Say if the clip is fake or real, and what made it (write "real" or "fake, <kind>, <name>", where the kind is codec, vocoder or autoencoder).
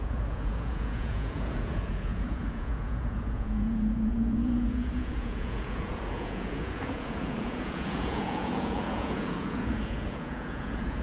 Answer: fake, vocoder, Vocos